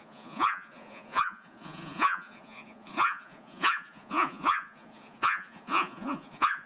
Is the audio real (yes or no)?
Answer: no